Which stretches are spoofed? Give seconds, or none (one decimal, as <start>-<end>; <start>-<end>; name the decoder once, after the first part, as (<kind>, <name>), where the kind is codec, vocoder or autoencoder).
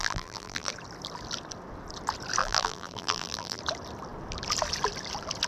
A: 0.0-0.7 (vocoder, BigVGAN v2); 2.4-3.6